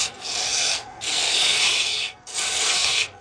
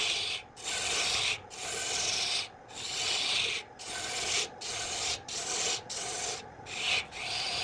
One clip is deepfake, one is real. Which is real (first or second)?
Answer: second